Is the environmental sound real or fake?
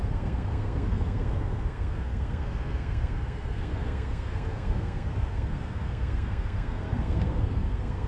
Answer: fake